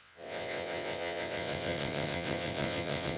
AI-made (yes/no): yes